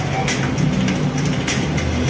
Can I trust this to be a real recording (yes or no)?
yes